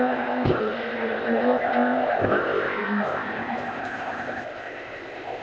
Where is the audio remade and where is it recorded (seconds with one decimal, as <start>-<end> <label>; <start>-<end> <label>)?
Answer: 0.0-5.4 remade